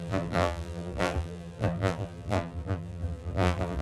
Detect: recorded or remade remade